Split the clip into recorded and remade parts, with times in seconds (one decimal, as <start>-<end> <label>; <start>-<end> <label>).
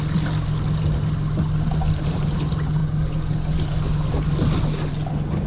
0.0-5.5 recorded